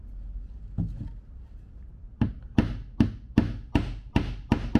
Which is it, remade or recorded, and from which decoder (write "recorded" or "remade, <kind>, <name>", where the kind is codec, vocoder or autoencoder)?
recorded